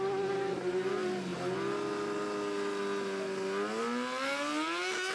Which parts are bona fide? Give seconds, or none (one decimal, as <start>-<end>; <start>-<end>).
0.0-5.1